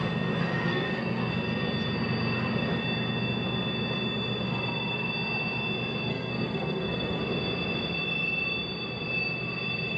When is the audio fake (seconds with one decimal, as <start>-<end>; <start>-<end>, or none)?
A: 0.4-1.3; 6.1-7.2